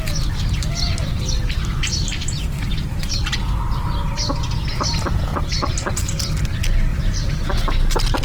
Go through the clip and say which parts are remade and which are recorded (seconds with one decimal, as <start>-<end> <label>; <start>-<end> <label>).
0.0-1.0 recorded; 1.0-3.2 remade; 3.2-6.9 recorded; 6.9-7.5 remade; 7.5-8.2 recorded